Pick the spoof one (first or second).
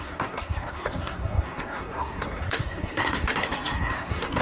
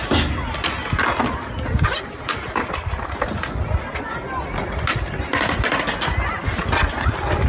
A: first